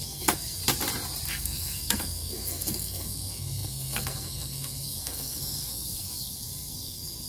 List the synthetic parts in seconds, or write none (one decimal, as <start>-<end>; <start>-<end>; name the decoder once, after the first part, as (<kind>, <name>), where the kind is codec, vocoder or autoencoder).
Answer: 0.0-0.6 (codec, SNAC); 1.3-7.3